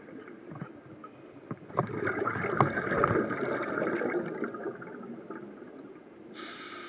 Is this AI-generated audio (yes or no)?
no